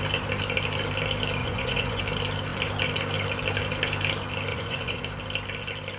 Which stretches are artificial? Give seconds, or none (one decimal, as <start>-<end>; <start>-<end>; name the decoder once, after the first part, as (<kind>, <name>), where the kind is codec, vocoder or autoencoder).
1.4-2.0 (vocoder, Vocos); 4.5-5.0